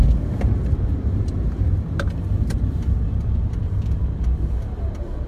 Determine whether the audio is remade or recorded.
recorded